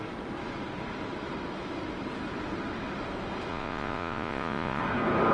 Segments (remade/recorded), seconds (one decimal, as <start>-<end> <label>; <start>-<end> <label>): 0.0-3.5 recorded; 3.5-4.8 remade; 4.8-5.3 recorded